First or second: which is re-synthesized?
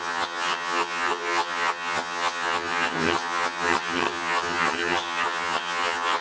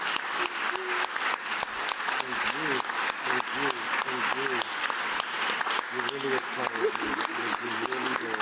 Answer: first